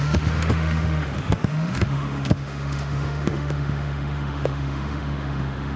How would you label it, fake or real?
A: fake